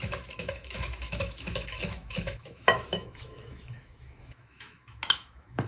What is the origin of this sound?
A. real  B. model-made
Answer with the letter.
B